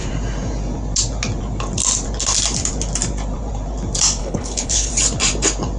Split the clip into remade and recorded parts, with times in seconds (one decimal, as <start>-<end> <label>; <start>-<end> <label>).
0.0-4.2 recorded; 4.2-4.9 remade; 4.9-5.8 recorded